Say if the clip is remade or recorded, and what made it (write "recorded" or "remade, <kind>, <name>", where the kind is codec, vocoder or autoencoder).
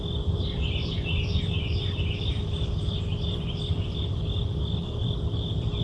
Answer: recorded